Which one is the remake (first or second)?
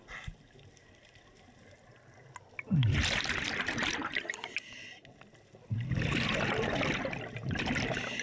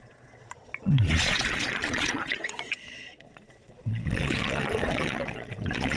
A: second